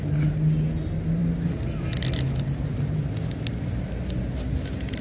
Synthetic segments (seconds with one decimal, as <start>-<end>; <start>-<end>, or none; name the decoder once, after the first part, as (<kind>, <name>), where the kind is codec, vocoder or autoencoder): none